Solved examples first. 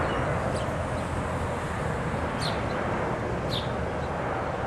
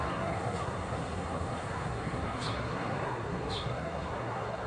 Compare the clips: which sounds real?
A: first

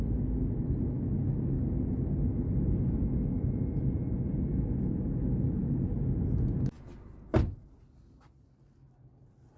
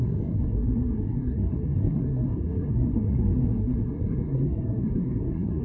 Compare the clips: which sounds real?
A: first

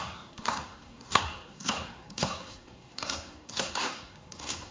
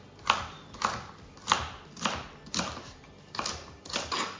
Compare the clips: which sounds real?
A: second